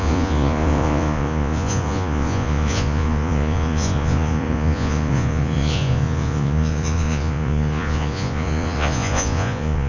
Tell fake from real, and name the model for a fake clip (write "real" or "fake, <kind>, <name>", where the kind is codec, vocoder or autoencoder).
fake, vocoder, Vocos